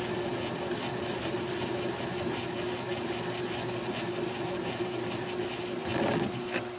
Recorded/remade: recorded